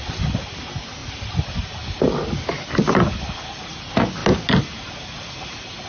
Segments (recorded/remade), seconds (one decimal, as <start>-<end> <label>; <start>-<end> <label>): 0.0-5.9 recorded